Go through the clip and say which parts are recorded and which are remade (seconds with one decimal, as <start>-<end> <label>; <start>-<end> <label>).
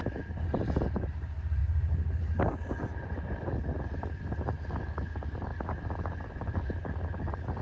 0.0-7.6 recorded